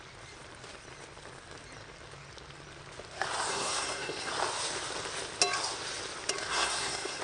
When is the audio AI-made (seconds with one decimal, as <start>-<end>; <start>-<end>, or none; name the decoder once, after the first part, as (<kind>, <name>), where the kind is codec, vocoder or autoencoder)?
3.5-4.3 (codec, SNAC); 6.5-7.2